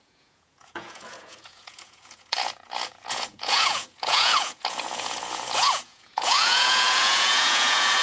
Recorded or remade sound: remade